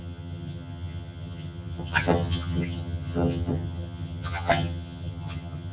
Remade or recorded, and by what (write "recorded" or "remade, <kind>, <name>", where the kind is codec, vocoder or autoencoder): remade, vocoder, HiFi-GAN